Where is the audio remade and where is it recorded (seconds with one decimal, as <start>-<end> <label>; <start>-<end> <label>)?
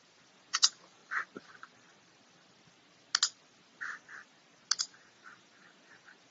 0.0-1.0 remade; 1.0-4.8 recorded; 4.8-6.3 remade